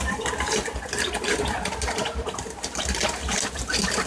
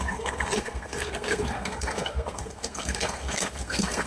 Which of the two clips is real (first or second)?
first